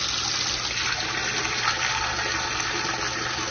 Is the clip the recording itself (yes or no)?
yes